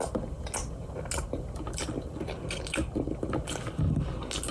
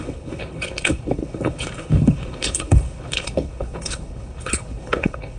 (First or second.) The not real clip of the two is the second